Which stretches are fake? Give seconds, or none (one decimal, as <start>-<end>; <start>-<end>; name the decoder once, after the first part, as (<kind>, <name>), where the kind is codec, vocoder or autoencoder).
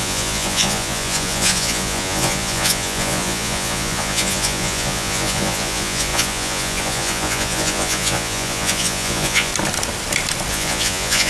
0.0-9.5 (vocoder, Vocos); 10.5-11.3